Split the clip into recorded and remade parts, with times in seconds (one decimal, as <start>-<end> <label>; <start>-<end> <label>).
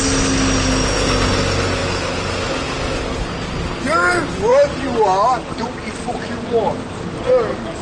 0.0-7.8 recorded